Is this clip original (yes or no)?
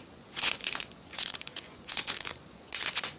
no